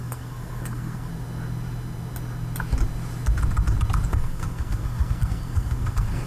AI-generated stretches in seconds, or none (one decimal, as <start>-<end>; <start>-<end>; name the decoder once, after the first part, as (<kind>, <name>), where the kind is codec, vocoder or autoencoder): 0.0-1.1 (codec, SNAC); 4.1-6.3